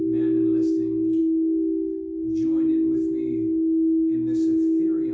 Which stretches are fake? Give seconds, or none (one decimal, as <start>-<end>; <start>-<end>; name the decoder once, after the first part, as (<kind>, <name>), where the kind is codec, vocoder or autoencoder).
none